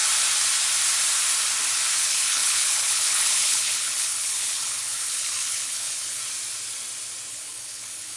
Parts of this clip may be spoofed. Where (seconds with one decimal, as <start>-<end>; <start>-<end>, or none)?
2.0-6.2; 7.3-8.2